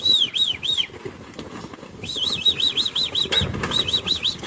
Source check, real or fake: real